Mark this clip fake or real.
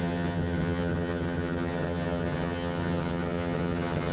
fake